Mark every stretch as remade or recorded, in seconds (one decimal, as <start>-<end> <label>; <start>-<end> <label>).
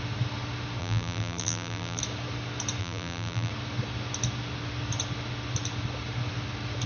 0.0-0.8 recorded; 0.8-2.0 remade; 2.0-2.8 recorded; 2.8-3.5 remade; 3.5-6.9 recorded